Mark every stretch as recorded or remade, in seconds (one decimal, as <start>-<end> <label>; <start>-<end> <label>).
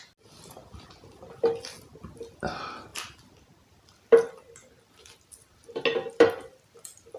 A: 0.0-7.2 recorded